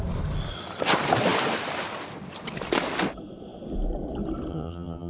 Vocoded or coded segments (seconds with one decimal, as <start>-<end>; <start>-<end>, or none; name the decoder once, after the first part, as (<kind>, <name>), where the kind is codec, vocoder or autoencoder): 4.5-5.1 (vocoder, HiFi-GAN)